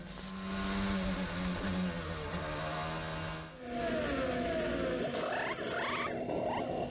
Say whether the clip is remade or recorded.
recorded